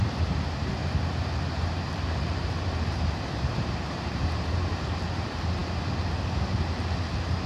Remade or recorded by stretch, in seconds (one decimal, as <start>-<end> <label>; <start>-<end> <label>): 0.0-0.8 recorded; 0.8-5.0 remade; 5.0-7.5 recorded